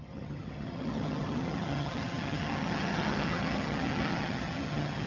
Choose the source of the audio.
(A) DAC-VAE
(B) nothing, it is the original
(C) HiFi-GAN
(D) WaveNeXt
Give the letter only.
C